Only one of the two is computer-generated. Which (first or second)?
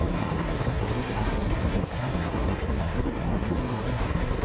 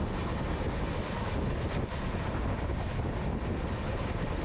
first